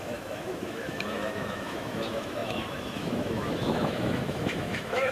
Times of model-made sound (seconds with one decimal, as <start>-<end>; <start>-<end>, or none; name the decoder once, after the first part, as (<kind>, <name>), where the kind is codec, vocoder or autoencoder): 0.0-5.1 (autoencoder, DAC-VAE)